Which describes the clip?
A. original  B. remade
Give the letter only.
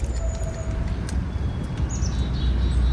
A